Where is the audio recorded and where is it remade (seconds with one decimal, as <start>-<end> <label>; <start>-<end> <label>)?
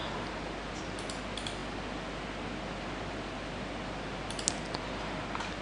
0.0-5.6 recorded